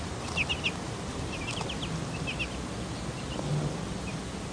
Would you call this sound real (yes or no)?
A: yes